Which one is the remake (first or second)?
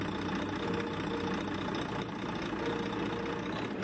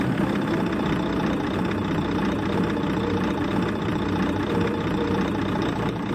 second